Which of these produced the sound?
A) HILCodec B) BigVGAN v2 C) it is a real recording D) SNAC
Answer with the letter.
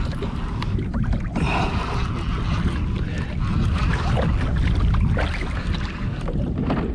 C